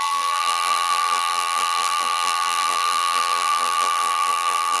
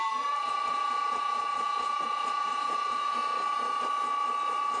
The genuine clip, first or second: second